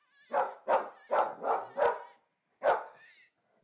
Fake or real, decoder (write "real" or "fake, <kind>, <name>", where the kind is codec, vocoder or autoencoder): real